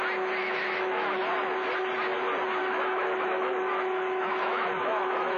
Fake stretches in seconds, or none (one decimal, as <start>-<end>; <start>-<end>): 0.4-1.2; 2.6-5.4